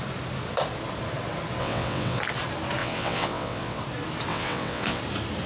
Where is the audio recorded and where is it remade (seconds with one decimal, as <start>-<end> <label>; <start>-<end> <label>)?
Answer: 0.0-1.6 recorded; 1.6-2.2 remade; 2.2-2.8 recorded; 2.8-3.8 remade; 3.8-4.3 recorded; 4.3-5.0 remade; 5.0-5.5 recorded